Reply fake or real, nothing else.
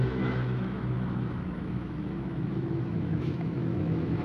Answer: fake